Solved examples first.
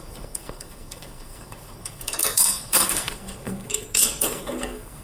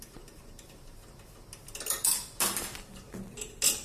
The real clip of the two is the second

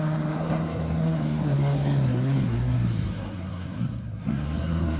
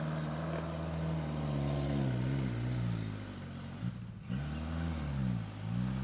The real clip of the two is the second